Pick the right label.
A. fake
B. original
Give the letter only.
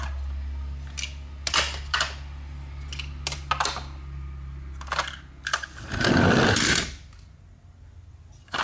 B